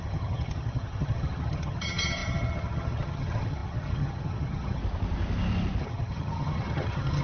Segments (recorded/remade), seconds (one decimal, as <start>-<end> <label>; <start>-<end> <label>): 0.0-4.8 remade; 4.8-5.8 recorded; 5.8-7.2 remade